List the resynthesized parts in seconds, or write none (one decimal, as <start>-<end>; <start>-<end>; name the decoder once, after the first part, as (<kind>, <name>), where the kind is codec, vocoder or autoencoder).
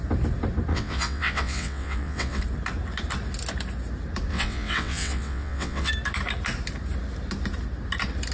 0.7-2.4 (vocoder, WaveNeXt); 4.3-5.9